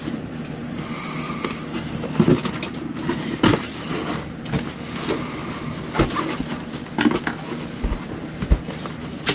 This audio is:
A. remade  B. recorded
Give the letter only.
B